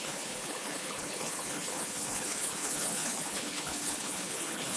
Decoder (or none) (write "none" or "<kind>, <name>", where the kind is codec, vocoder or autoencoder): codec, HILCodec